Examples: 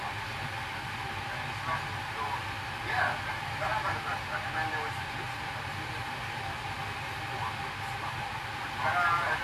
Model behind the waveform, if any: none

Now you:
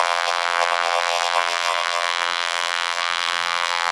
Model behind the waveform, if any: vocoder, BigVGAN v2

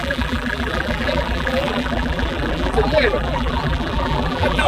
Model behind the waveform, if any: vocoder, BigVGAN v2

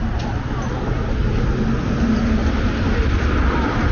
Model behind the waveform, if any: none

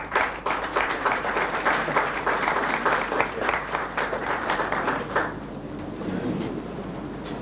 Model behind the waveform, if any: vocoder, BigVGAN v2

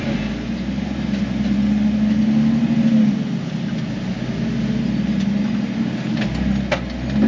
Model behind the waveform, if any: none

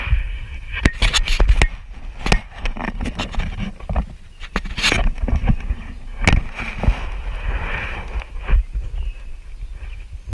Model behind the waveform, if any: none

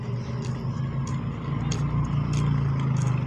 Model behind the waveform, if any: none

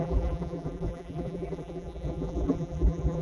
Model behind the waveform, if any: vocoder, BigVGAN v2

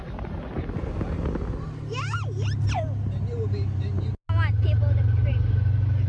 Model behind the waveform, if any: none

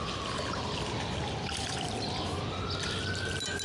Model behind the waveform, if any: none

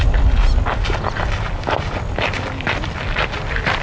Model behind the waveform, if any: none